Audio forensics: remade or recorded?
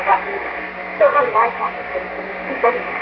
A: remade